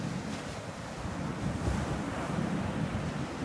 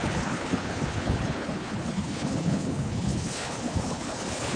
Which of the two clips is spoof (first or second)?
second